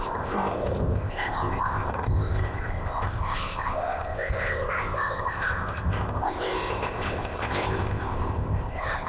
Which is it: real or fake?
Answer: fake